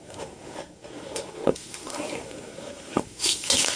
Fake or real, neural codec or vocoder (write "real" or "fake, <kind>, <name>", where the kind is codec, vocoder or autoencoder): fake, codec, SNAC